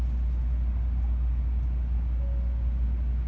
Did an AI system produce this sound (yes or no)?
no